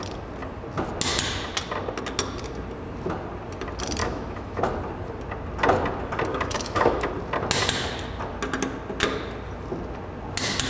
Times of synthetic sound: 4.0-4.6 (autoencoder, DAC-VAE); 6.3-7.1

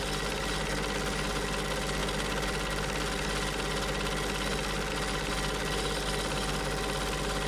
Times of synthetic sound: none

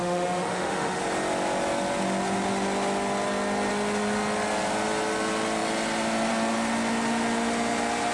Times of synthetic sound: 0.0-1.0 (autoencoder, DAC-VAE)

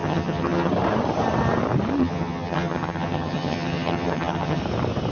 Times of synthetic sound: 0.0-0.7 (vocoder, HiFi-GAN); 2.0-4.6